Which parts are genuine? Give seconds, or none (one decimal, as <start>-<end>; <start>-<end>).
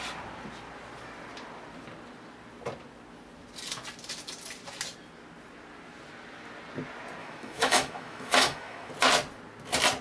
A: 0.0-7.2; 8.9-10.0